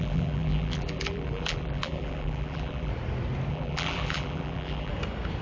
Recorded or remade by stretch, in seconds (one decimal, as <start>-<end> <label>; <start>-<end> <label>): 0.0-2.9 remade; 2.9-3.5 recorded; 3.5-4.9 remade; 4.9-5.4 recorded